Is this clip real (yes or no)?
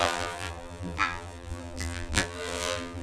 no